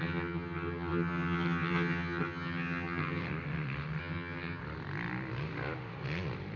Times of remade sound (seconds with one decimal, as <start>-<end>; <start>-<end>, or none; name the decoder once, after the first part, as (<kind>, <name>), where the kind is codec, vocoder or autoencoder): 0.0-3.2 (vocoder, HiFi-GAN); 4.0-4.6